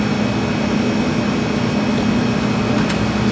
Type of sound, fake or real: real